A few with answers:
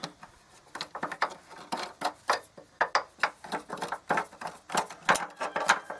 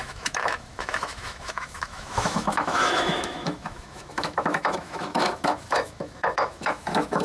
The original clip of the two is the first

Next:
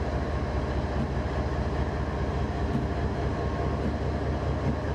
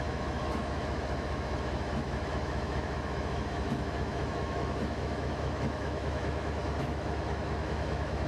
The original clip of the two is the first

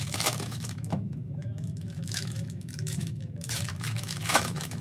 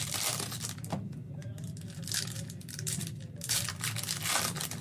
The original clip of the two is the second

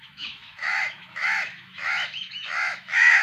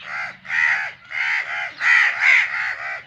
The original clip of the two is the second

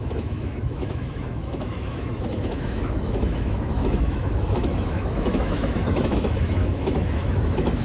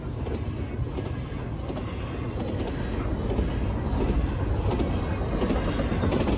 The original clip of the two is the second